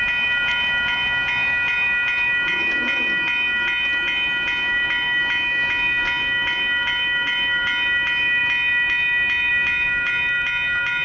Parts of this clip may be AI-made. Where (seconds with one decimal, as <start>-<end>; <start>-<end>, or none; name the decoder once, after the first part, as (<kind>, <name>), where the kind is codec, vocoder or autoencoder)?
none